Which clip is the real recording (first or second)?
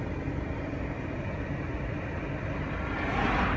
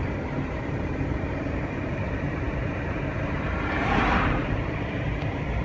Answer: first